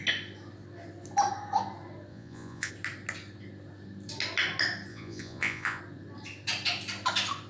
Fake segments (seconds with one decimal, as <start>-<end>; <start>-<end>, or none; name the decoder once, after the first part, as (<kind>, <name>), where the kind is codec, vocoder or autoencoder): 2.1-2.7 (vocoder, Vocos); 4.9-5.8